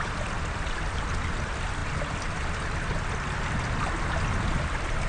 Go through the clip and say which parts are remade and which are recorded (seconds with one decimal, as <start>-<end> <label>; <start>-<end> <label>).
0.0-5.1 recorded